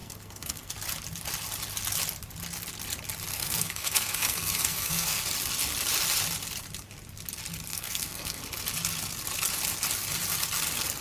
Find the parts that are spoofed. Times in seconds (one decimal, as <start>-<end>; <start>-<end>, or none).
0.0-0.7; 3.3-5.2; 7.7-8.4